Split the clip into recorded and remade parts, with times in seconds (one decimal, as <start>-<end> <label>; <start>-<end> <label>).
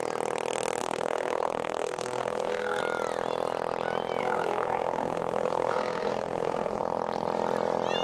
0.0-0.8 recorded; 0.8-2.8 remade; 2.8-4.2 recorded; 4.2-6.8 remade; 6.8-8.0 recorded